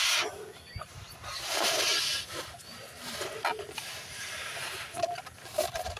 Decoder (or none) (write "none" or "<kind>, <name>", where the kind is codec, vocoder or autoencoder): none